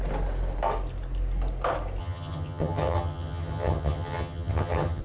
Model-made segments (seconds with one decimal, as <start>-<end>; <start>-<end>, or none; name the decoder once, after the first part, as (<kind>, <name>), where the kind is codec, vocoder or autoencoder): 2.0-5.0 (vocoder, HiFi-GAN)